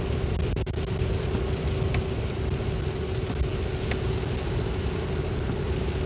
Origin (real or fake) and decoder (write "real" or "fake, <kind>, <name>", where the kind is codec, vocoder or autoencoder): real